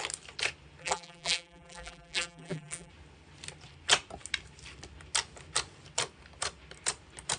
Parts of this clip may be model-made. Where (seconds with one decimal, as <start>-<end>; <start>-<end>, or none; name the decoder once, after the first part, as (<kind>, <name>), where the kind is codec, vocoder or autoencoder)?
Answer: 0.8-2.9 (vocoder, BigVGAN v2)